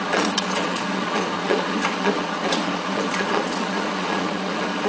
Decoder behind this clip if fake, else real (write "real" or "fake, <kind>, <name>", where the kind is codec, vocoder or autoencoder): fake, vocoder, Vocos